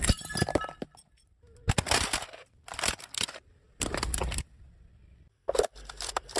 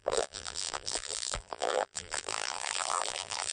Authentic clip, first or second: first